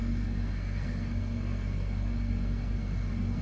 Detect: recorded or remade remade